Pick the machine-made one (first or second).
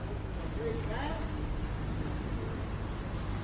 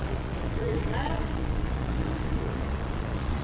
second